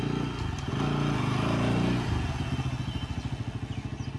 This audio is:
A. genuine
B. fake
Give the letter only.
A